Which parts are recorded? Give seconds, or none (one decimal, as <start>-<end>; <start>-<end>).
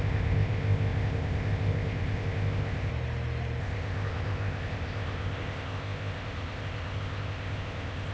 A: 2.9-3.6